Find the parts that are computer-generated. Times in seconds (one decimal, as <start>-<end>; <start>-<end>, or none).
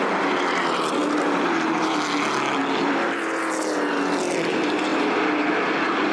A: 1.0-1.8; 2.6-3.4; 4.9-6.1